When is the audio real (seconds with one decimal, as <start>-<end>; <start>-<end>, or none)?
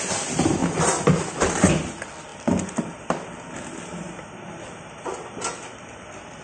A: 0.0-6.4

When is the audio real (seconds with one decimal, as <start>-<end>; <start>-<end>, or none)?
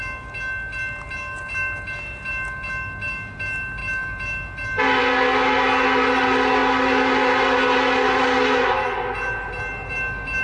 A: 0.0-10.4